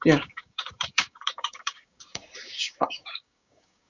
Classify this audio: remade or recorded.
remade